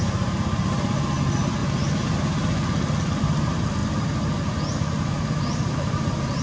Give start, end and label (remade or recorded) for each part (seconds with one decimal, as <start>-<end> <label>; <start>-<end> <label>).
0.0-6.4 recorded